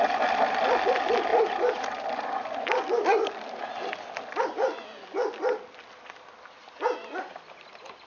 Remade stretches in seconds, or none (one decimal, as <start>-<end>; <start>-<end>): 7.0-8.1